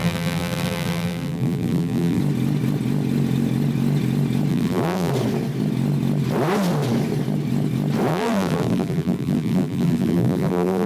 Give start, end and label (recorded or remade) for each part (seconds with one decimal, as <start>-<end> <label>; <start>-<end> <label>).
0.0-2.2 remade; 2.2-4.5 recorded; 4.5-5.1 remade; 5.1-8.1 recorded; 8.1-10.9 remade